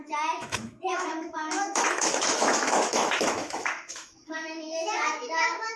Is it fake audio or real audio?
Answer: fake